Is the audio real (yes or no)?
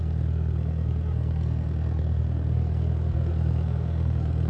no